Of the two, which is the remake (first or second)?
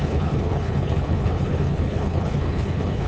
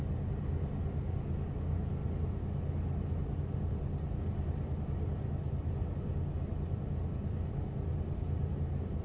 first